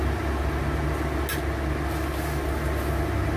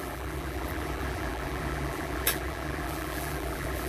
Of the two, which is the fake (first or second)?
second